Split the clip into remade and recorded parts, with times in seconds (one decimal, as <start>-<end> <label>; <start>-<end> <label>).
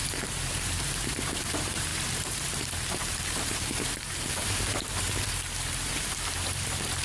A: 0.0-7.0 remade